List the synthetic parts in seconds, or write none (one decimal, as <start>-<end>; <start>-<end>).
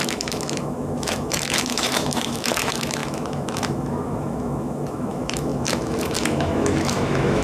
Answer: 0.0-7.4